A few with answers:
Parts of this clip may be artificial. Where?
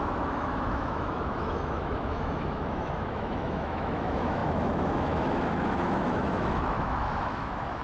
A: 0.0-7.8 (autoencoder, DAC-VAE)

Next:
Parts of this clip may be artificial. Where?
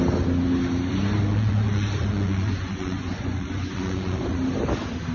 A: 1.3-4.4 (vocoder, Vocos)